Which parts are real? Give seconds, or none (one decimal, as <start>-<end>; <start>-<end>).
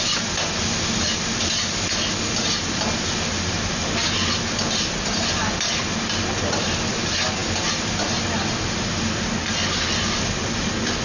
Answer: 0.0-11.0